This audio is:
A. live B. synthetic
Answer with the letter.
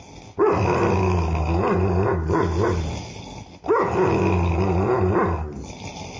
A